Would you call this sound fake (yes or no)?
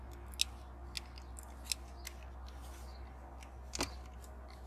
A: no